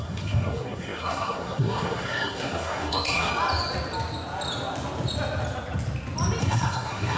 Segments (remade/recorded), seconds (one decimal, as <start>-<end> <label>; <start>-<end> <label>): 0.0-3.3 remade; 3.3-6.4 recorded; 6.4-7.2 remade